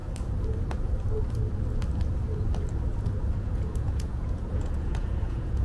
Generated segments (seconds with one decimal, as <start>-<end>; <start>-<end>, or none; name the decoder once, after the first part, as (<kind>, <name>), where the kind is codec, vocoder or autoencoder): 3.4-5.6 (vocoder, Vocos)